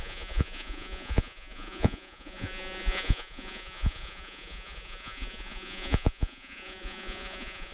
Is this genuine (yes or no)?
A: no